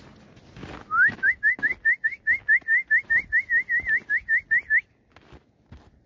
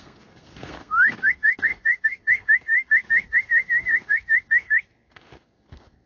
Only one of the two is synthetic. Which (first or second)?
second